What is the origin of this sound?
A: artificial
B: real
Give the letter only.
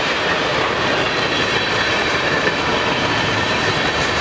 A